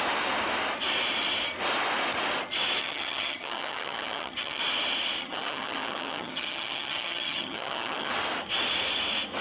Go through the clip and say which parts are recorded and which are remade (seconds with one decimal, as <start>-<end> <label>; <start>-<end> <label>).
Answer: 0.0-2.8 recorded; 2.8-4.6 remade; 4.6-5.2 recorded; 5.2-8.1 remade; 8.1-9.4 recorded